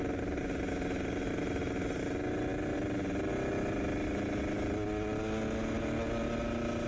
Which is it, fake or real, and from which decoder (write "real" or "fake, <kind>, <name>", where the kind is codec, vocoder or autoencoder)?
real